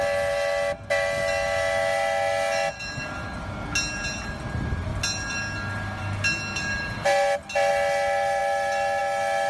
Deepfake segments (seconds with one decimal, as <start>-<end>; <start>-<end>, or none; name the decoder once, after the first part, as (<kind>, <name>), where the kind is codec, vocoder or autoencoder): none